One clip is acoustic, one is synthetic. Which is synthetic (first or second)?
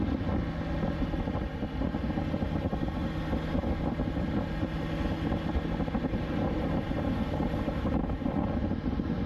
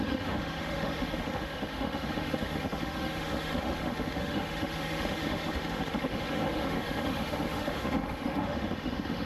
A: second